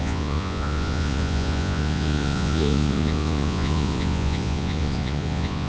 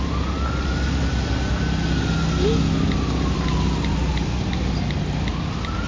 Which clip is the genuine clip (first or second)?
second